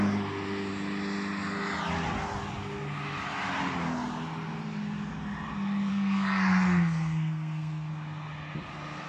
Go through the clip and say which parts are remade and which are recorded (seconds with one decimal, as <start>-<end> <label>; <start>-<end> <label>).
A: 0.0-5.9 recorded; 5.9-7.9 remade; 7.9-9.1 recorded